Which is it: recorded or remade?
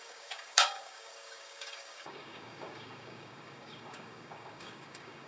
remade